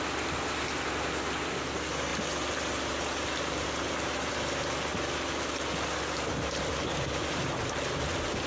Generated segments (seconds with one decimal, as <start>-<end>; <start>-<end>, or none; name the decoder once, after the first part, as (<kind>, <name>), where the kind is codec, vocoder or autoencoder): none